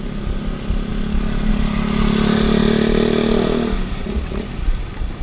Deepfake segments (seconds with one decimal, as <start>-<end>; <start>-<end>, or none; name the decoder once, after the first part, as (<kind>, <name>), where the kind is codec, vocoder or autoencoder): 4.0-4.8 (vocoder, Vocos)